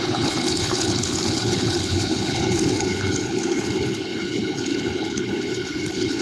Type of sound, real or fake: fake